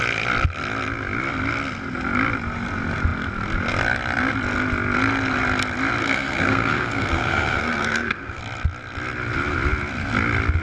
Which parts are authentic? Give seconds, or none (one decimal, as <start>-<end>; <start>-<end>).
0.0-6.0; 8.4-10.6